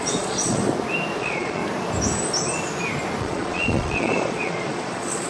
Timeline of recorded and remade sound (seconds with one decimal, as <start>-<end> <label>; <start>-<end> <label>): 0.0-0.6 remade; 0.6-1.2 recorded; 1.2-1.6 remade; 1.6-3.2 recorded; 3.2-5.3 remade